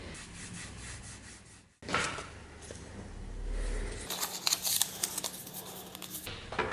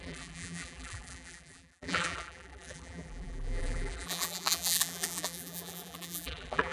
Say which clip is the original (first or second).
first